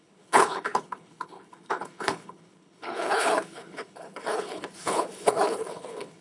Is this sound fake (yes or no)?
yes